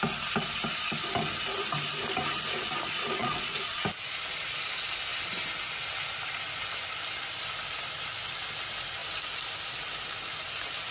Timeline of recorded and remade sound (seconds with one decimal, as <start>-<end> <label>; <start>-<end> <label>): 0.0-3.2 recorded; 3.2-3.8 remade; 3.8-10.9 recorded